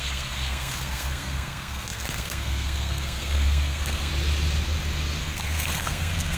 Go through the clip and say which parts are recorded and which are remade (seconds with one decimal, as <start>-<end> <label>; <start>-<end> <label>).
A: 0.0-4.1 remade; 4.1-5.2 recorded; 5.2-6.4 remade